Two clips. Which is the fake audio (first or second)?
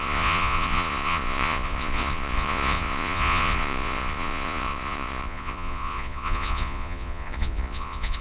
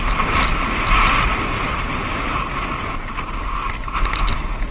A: first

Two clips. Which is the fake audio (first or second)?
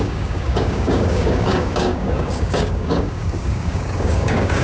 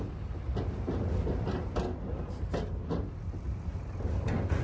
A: first